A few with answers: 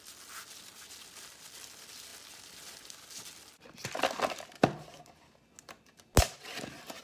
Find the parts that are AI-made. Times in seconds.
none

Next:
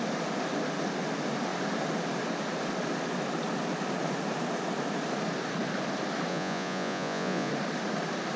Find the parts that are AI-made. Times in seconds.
6.3-7.5 (vocoder, Vocos)

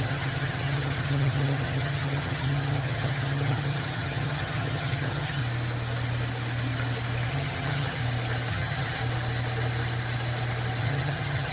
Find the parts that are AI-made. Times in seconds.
0.0-5.4 (vocoder, HiFi-GAN); 7.3-8.0; 8.5-9.0; 10.8-11.5